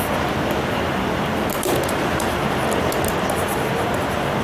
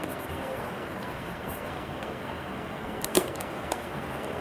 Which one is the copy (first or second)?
second